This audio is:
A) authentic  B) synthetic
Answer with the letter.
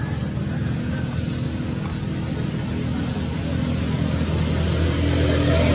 A